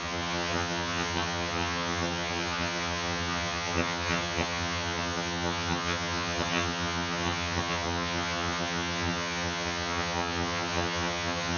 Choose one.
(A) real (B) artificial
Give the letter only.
B